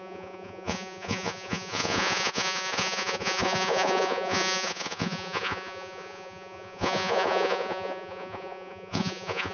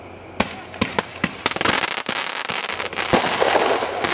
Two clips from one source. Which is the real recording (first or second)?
second